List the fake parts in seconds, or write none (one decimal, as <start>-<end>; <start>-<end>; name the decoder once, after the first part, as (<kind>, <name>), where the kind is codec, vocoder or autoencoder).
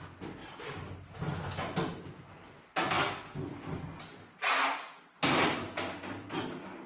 none